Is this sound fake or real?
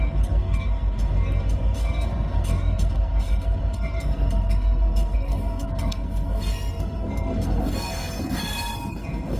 fake